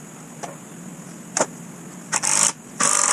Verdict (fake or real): real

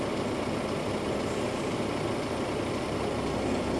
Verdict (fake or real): real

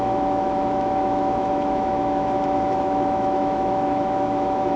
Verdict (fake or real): fake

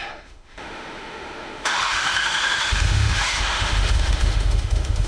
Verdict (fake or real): fake